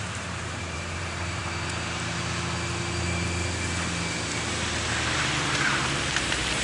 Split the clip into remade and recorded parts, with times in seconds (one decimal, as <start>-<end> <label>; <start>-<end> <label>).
0.0-1.4 remade; 1.4-5.4 recorded; 5.4-6.6 remade